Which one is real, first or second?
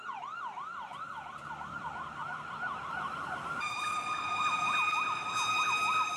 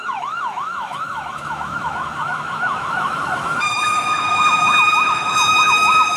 first